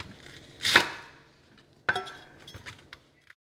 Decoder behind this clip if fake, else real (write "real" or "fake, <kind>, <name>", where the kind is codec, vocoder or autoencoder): real